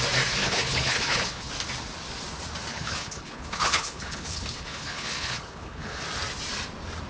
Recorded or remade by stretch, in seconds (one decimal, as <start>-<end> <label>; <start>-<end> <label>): 0.0-0.4 recorded; 0.4-1.5 remade; 1.5-2.7 recorded; 2.7-6.0 remade; 6.0-7.1 recorded